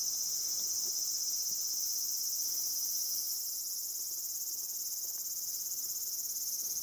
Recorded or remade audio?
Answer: recorded